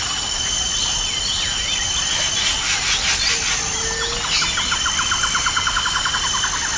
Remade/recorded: recorded